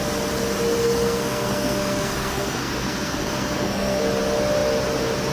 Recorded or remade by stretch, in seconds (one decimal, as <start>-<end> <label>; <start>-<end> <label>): 0.0-0.8 recorded; 0.8-4.0 remade; 4.0-5.3 recorded